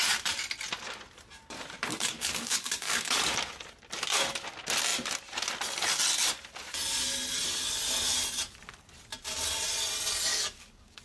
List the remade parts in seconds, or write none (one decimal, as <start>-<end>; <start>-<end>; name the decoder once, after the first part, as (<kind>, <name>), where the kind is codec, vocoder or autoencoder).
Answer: 1.9-3.4 (codec, DAC); 10.3-11.0